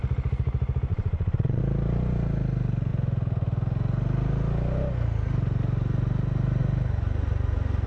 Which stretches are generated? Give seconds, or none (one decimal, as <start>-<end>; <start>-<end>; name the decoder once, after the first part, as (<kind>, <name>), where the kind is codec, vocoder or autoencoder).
0.9-1.6 (vocoder, WaveNeXt)